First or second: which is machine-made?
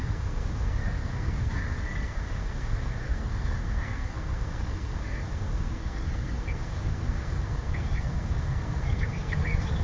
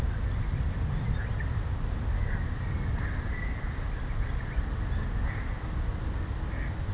first